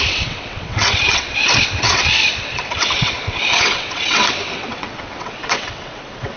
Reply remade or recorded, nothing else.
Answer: remade